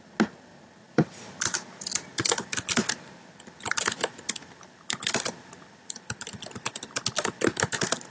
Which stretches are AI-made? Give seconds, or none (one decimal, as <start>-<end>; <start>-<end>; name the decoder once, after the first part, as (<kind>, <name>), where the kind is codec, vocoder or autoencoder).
0.5-5.4 (vocoder, BigVGAN v2)